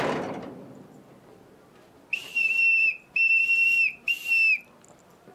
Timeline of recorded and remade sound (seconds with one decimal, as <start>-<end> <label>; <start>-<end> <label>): 0.0-5.3 recorded